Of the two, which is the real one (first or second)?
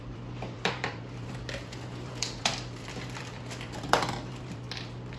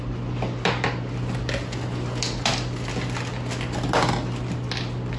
second